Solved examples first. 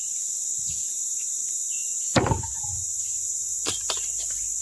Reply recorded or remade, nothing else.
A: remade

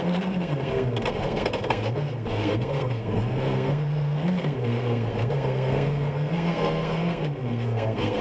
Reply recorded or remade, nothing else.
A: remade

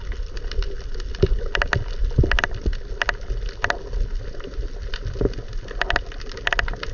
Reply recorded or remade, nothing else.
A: recorded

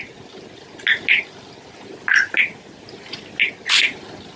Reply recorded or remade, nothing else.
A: recorded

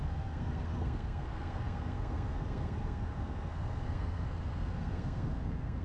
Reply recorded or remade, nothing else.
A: remade